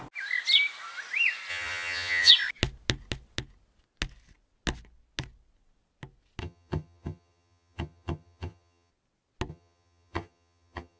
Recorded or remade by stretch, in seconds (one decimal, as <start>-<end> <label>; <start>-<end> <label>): 0.0-1.5 recorded; 1.5-2.3 remade; 2.3-6.4 recorded; 6.4-8.9 remade; 8.9-9.5 recorded; 9.5-11.0 remade

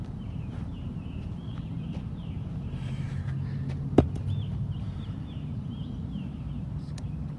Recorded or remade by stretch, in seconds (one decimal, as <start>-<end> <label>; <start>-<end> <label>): 0.0-3.1 remade; 3.1-4.7 recorded; 4.7-7.4 remade